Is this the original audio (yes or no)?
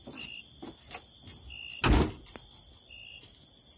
yes